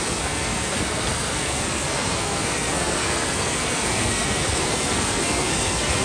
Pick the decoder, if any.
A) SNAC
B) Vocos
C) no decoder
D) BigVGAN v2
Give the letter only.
A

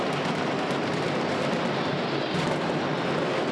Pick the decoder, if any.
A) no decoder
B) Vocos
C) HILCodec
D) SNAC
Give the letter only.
A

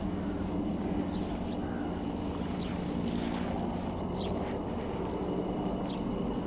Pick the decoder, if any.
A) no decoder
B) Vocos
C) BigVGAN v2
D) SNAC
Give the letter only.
A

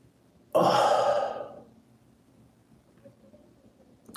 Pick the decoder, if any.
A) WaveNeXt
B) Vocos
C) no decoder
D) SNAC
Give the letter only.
C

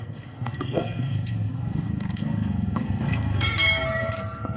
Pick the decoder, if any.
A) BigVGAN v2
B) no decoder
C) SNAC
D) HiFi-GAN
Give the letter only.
C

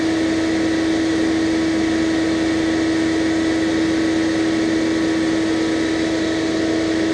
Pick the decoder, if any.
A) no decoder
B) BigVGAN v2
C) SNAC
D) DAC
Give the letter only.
A